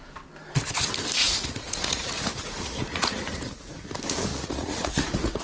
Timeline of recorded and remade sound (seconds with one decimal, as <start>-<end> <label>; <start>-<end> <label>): 0.0-1.2 recorded; 1.2-3.9 remade; 3.9-4.3 recorded; 4.3-5.4 remade